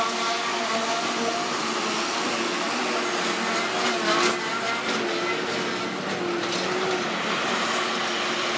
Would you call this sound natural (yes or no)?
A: yes